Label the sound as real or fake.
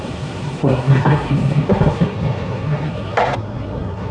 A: fake